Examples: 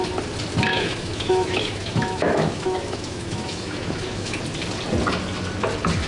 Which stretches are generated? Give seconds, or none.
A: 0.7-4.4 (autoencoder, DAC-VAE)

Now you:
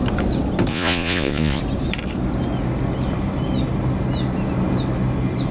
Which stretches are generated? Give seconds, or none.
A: 0.7-1.6 (vocoder, Vocos)

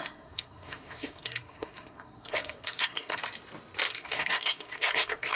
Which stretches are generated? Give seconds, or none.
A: 0.0-3.2 (codec, SNAC); 3.9-5.4